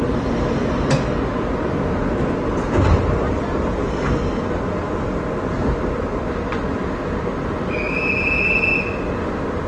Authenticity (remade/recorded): recorded